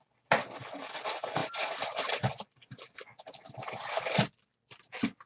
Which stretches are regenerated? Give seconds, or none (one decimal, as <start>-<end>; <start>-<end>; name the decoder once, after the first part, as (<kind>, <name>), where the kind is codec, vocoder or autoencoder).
1.4-4.6 (vocoder, BigVGAN v2)